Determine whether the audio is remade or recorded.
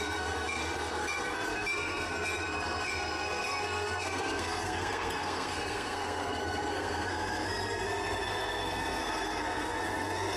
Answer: remade